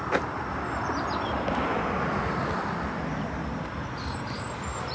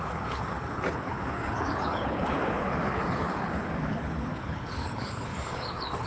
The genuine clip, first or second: first